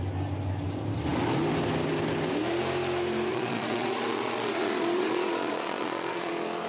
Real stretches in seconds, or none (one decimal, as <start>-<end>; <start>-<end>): 0.0-3.3; 6.3-6.7